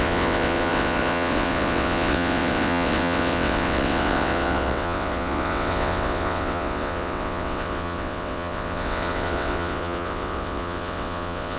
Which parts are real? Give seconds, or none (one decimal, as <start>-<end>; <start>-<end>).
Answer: none